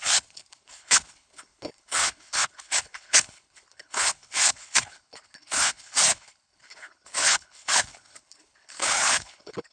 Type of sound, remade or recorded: remade